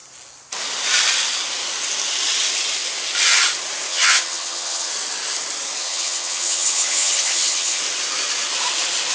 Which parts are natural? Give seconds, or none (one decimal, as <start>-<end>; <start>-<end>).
0.0-3.9; 4.9-5.8; 7.8-9.1